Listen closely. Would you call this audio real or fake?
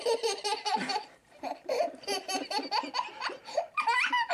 fake